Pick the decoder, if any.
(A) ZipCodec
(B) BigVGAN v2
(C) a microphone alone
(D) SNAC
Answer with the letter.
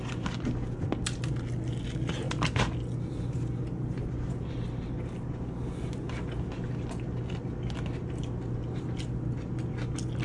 C